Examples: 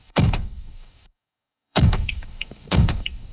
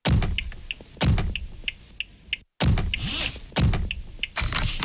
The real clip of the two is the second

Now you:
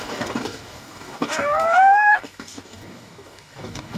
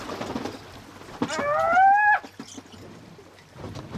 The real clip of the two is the second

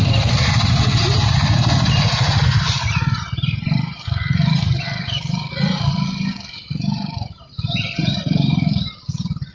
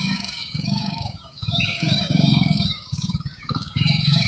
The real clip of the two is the first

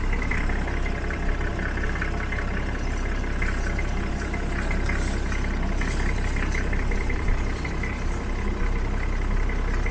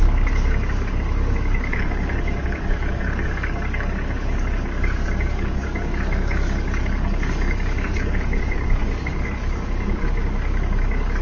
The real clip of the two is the first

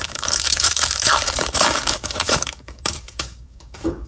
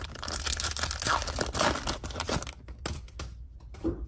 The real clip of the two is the second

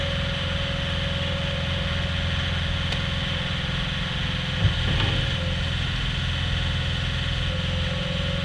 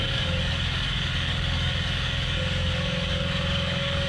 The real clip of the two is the first